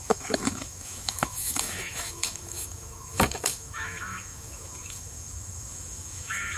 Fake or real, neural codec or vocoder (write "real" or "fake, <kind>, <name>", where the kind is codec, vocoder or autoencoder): fake, autoencoder, DAC-VAE